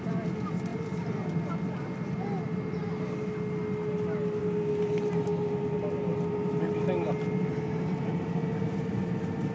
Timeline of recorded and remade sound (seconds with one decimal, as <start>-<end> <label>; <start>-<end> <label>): 0.0-9.5 recorded